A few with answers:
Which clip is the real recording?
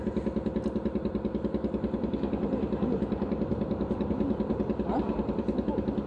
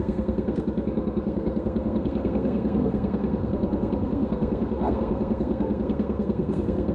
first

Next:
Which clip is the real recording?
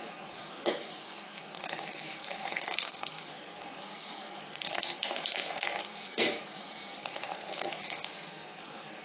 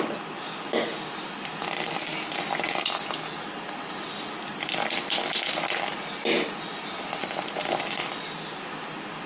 second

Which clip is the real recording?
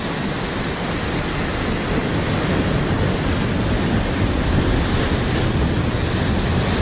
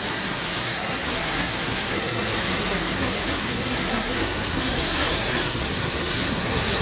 first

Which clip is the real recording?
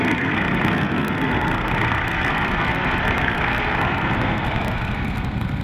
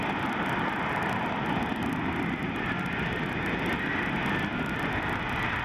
second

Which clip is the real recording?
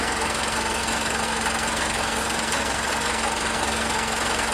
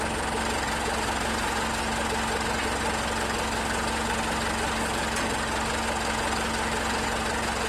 second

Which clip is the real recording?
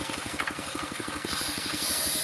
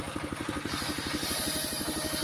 second